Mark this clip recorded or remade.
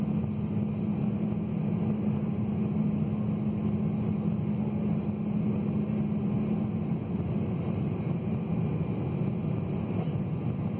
recorded